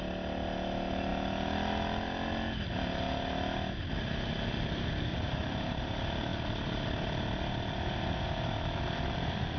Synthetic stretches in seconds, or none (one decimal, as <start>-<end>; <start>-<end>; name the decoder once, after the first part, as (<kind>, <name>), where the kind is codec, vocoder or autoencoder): 5.1-5.8 (vocoder, BigVGAN v2)